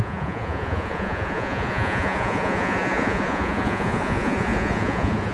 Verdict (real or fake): fake